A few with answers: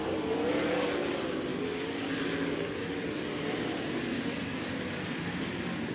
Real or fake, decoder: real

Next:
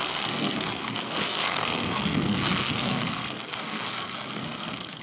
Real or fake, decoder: fake, codec, SNAC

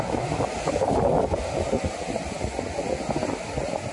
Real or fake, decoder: real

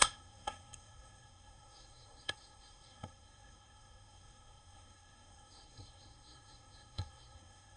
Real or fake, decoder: fake, codec, SNAC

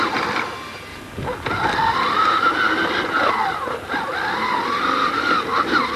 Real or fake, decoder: real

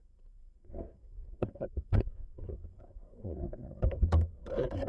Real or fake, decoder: fake, codec, SNAC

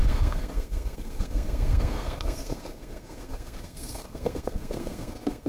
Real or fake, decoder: fake, codec, SNAC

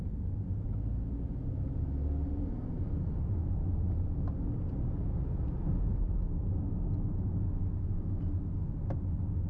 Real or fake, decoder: real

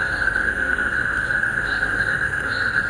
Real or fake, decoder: fake, codec, SNAC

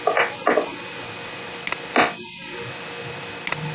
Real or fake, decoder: real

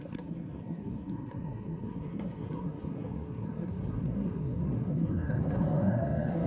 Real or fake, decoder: fake, codec, SNAC